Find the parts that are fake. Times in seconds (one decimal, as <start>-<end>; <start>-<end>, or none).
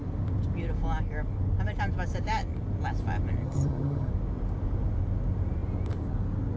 3.4-4.1